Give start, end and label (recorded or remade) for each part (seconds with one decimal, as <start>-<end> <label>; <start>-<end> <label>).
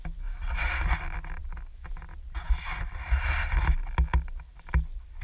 0.0-5.2 recorded